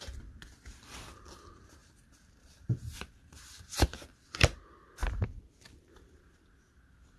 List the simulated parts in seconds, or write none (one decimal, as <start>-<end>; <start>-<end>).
1.8-4.0; 5.0-6.6